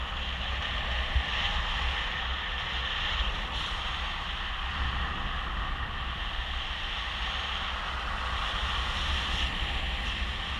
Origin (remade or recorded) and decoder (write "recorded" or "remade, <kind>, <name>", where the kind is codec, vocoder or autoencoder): recorded